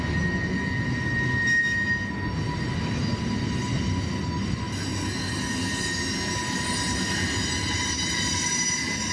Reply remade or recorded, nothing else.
recorded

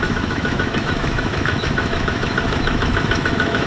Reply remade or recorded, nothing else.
remade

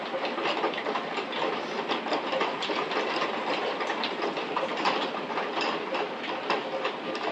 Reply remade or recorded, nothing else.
recorded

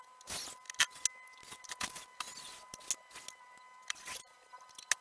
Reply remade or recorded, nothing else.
recorded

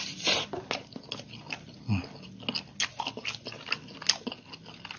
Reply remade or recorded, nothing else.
recorded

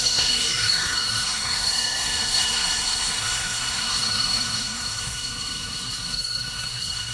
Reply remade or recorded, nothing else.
remade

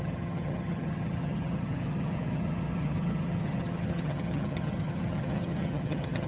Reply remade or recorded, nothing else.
remade